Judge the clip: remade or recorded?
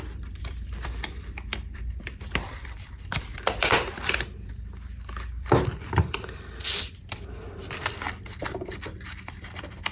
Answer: remade